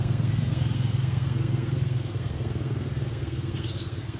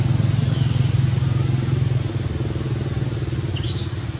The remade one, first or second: first